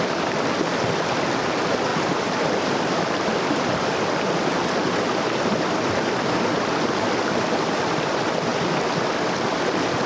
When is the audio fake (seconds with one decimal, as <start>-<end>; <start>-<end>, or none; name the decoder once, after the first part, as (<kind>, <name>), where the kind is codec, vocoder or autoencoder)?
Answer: none